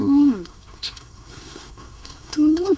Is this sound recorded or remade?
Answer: remade